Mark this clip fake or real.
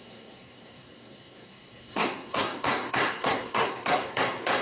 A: fake